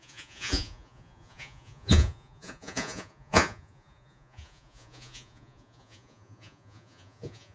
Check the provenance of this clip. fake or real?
fake